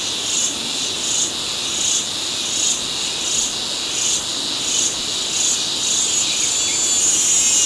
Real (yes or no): yes